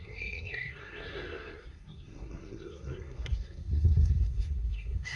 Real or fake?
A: fake